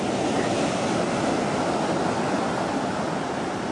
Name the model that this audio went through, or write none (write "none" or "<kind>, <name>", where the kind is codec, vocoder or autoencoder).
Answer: none